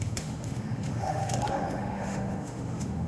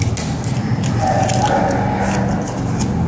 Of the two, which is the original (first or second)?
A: second